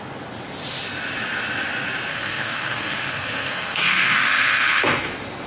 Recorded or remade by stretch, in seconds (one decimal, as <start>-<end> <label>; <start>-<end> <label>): 0.0-2.1 recorded; 2.1-5.1 remade; 5.1-5.5 recorded